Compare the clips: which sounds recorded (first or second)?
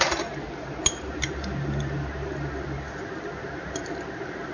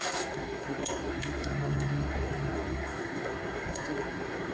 first